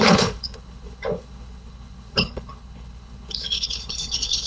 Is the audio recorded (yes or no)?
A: no